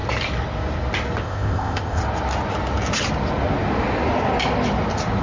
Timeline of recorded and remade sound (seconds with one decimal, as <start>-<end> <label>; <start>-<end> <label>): 0.0-1.2 recorded; 1.2-2.0 remade; 2.0-5.2 recorded